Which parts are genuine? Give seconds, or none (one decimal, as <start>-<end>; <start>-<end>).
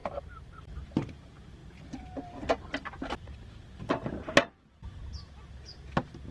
0.8-6.3